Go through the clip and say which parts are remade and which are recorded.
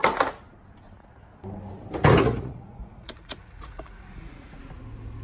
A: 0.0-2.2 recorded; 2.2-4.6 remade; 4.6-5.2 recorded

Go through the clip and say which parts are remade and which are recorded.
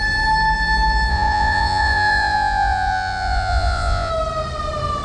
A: 0.0-1.1 recorded; 1.1-4.1 remade; 4.1-5.0 recorded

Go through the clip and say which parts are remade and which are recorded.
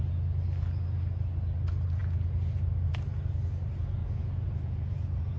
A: 0.0-4.0 recorded; 4.0-5.4 remade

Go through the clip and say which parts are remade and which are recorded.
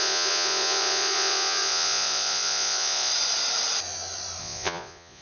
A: 0.0-3.1 remade; 3.1-4.4 recorded; 4.4-5.2 remade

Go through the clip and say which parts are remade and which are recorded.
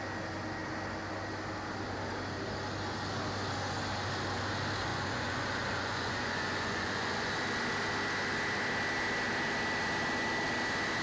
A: 0.0-4.9 recorded; 4.9-7.3 remade; 7.3-11.0 recorded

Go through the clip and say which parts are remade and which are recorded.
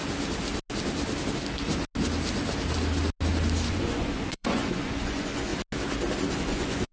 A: 0.0-3.7 recorded; 3.7-5.5 remade; 5.5-6.4 recorded; 6.4-6.9 remade